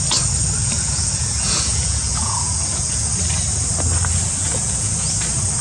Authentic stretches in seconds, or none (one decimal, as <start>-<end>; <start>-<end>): 0.0-0.6; 3.1-4.4; 5.1-5.6